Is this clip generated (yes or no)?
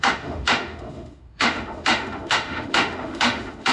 yes